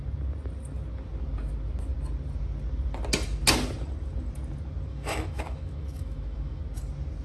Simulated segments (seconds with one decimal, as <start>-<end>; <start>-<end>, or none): 4.9-6.6

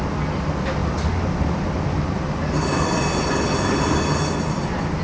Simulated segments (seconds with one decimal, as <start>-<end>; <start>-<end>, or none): none

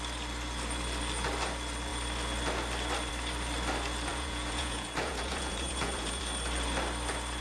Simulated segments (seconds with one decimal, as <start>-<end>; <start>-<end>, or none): 4.1-6.2

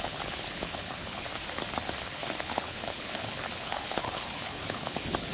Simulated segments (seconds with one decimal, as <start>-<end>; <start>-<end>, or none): 0.0-1.3; 2.0-5.3